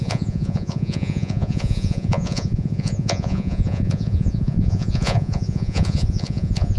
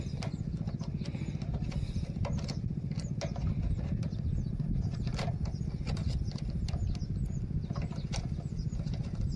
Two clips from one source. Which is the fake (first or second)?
first